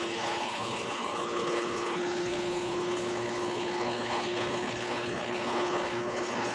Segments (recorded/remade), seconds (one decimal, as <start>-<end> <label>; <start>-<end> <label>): 0.0-6.5 remade